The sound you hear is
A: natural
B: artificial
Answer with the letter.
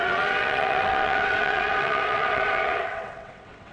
B